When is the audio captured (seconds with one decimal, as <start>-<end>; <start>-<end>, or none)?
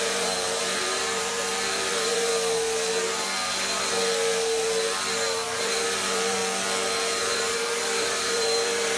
2.3-5.6; 6.4-7.2